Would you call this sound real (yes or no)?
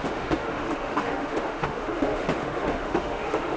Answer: no